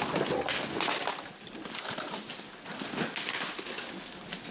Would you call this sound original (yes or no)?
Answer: yes